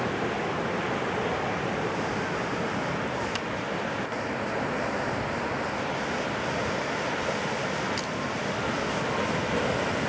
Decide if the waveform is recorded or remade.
recorded